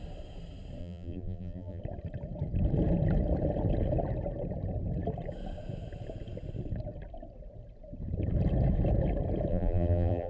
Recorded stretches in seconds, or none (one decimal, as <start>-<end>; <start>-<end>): 0.0-0.8; 1.8-9.5